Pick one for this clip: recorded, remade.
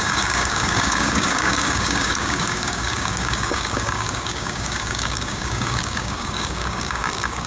remade